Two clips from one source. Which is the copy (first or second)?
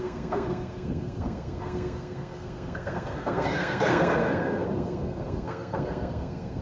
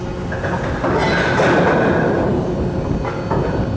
first